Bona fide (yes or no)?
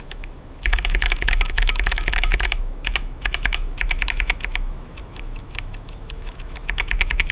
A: no